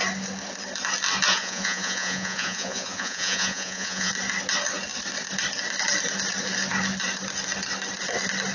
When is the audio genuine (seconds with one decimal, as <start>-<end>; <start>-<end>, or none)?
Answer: 0.0-1.3; 4.1-8.5

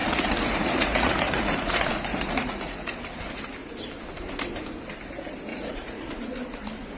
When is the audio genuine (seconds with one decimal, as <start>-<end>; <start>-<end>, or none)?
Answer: 2.9-5.5; 6.1-7.0

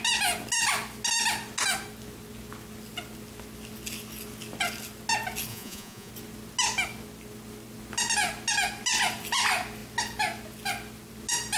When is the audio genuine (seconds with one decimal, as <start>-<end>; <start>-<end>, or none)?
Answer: 0.0-5.5; 6.1-11.6

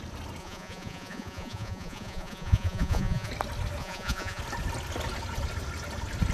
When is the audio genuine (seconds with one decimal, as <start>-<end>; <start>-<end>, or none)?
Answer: 0.0-0.4; 3.3-3.8; 4.4-6.3

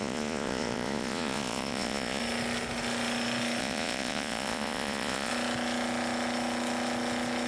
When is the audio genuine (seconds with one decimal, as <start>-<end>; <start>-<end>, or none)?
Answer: 2.2-3.6; 5.3-7.5

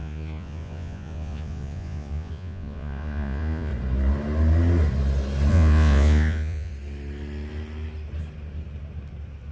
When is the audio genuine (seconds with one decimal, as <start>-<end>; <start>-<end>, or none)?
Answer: 3.7-5.5; 6.7-9.5

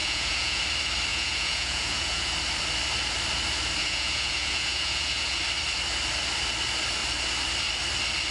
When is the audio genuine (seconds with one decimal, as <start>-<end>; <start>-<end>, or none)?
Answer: 0.6-1.1; 2.3-3.8; 5.4-8.3